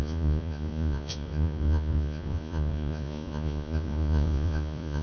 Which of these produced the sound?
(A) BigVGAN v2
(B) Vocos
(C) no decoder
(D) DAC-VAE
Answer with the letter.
B